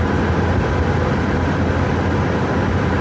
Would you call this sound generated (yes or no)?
no